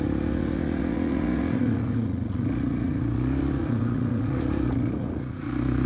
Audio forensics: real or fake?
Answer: fake